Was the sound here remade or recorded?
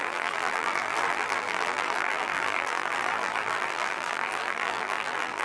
remade